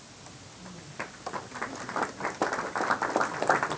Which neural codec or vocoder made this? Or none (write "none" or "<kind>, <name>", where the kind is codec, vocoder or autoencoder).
none